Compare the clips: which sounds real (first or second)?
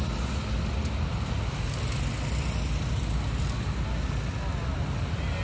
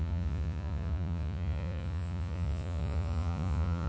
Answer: first